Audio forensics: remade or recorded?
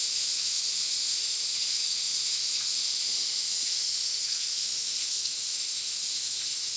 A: remade